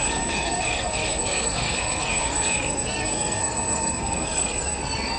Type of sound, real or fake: fake